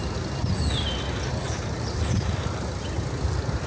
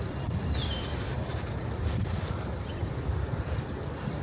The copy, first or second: second